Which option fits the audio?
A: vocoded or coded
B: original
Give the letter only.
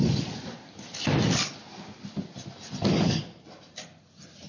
B